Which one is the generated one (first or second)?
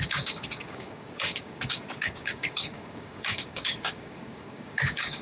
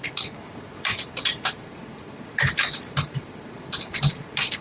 first